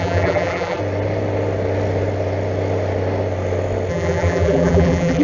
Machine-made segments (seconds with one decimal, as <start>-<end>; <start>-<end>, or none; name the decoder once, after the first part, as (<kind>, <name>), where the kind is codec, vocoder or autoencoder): 0.0-0.8 (vocoder, BigVGAN v2); 3.9-5.2